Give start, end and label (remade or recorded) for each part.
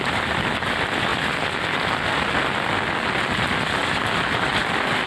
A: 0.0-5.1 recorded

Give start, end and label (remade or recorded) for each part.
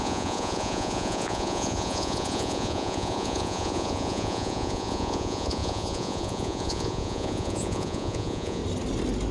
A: 0.0-8.6 remade; 8.6-9.3 recorded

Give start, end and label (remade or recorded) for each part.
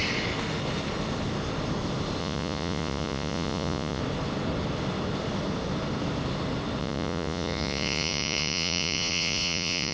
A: 0.0-2.2 recorded; 2.2-4.0 remade; 4.0-6.8 recorded; 6.8-9.9 remade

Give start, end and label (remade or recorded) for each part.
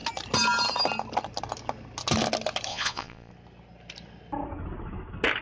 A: 0.0-2.7 recorded; 2.7-3.3 remade; 3.3-5.4 recorded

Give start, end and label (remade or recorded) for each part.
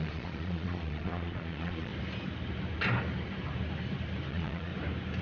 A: 0.0-1.9 remade; 1.9-4.3 recorded; 4.3-4.7 remade; 4.7-5.2 recorded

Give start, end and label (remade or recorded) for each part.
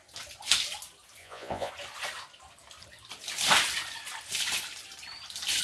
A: 0.0-1.2 recorded; 1.2-1.7 remade; 1.7-5.6 recorded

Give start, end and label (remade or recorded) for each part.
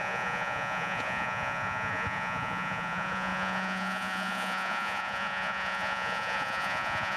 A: 0.0-7.2 remade